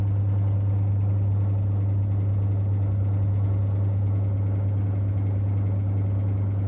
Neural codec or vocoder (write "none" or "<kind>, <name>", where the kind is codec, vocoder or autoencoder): none